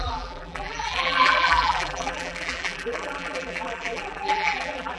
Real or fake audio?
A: fake